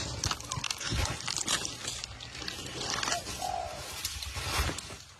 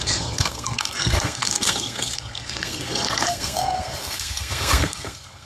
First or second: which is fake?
second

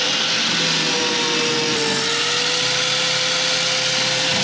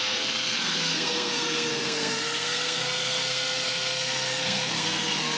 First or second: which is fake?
second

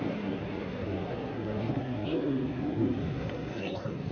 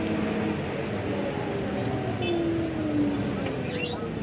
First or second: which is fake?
first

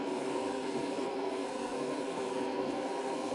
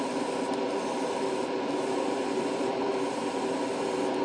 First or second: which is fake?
first